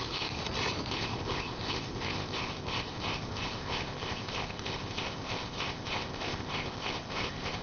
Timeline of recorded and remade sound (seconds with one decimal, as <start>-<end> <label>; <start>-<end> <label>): 0.0-0.4 remade; 0.4-0.9 recorded; 0.9-7.6 remade